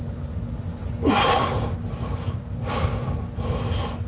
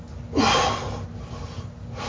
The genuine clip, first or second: second